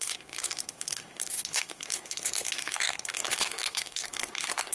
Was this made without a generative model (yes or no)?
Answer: no